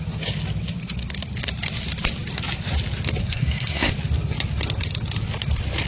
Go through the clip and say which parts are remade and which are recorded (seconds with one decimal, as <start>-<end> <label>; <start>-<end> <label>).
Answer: 0.0-3.2 recorded; 3.2-3.9 remade; 3.9-5.9 recorded